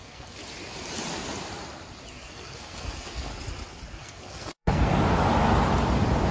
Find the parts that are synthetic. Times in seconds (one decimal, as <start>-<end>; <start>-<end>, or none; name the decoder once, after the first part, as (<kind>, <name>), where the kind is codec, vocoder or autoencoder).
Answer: 0.0-0.4 (codec, SNAC); 2.1-3.3; 3.9-4.9